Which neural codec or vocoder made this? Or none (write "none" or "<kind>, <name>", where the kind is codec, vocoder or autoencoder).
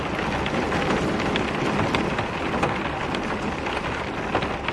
none